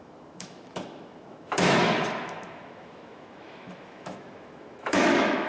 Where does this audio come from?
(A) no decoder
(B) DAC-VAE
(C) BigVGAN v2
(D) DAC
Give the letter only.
B